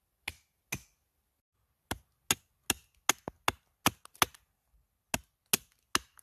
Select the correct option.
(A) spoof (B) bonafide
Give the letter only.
B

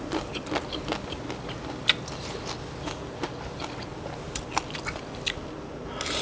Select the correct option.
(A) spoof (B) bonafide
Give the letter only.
B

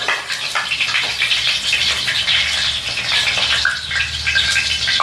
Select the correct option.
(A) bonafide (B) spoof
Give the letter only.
A